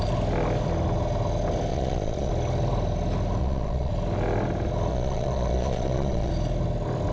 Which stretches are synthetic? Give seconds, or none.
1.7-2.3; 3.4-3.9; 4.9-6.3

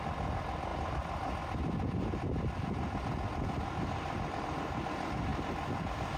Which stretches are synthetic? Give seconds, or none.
none

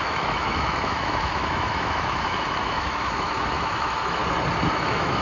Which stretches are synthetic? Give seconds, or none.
0.0-4.2; 4.7-5.2

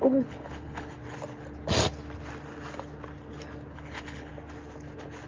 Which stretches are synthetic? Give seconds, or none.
0.0-1.0; 3.7-4.3

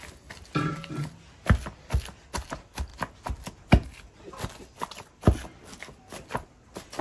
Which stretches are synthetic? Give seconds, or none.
none

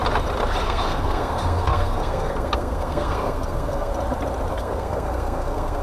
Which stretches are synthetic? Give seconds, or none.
0.6-3.9; 4.5-5.8

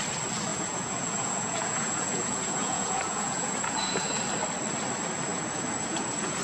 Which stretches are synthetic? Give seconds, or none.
0.5-4.2; 5.3-6.4